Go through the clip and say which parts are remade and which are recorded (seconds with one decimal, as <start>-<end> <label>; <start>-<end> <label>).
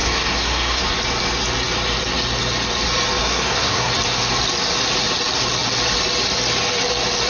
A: 0.0-0.8 remade; 0.8-3.2 recorded; 3.2-3.9 remade; 3.9-7.3 recorded